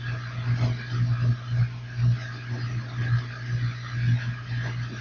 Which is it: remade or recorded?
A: recorded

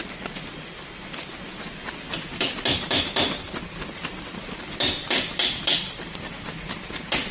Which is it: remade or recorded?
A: recorded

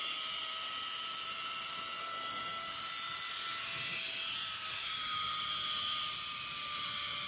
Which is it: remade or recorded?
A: recorded